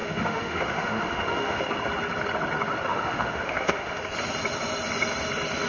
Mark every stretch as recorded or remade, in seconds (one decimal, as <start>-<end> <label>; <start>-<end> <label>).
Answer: 0.0-1.6 remade; 1.6-2.9 recorded; 2.9-4.0 remade; 4.0-5.7 recorded